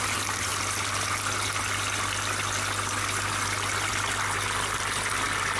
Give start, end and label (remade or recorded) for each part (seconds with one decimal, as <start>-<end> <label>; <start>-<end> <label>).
0.0-5.6 recorded